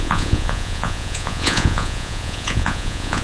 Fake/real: fake